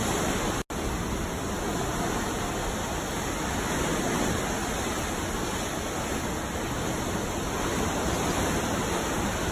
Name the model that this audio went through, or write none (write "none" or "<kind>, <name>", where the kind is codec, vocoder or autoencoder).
none